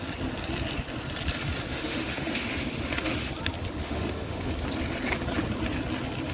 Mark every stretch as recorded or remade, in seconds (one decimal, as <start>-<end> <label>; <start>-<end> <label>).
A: 0.0-1.7 recorded; 1.7-3.3 remade; 3.3-3.8 recorded; 3.8-4.5 remade; 4.5-6.3 recorded